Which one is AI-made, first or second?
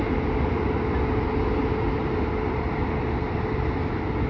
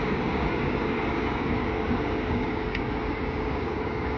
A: second